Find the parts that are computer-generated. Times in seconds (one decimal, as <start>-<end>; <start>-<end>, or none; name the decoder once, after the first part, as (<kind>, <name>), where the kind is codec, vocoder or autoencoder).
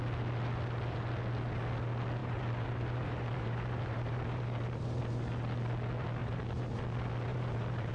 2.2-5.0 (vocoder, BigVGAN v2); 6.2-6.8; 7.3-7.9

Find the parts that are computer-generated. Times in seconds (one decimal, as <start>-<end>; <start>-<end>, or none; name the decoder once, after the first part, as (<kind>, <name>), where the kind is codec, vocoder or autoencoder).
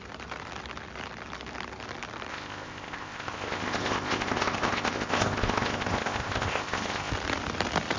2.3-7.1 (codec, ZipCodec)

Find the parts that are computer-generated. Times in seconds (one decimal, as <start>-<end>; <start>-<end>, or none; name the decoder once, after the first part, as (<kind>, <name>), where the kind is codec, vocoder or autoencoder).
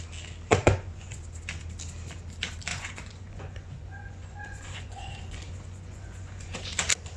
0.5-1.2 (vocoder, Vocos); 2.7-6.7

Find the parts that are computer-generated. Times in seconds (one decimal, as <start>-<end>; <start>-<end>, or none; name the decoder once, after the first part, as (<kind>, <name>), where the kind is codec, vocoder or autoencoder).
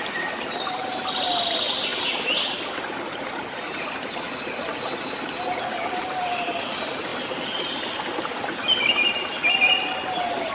none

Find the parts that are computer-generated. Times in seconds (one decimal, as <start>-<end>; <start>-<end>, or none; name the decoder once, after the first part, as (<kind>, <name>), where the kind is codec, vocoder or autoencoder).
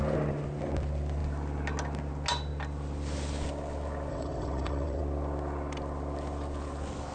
4.1-5.0 (vocoder, WaveNeXt)